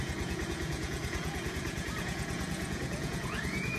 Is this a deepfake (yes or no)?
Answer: yes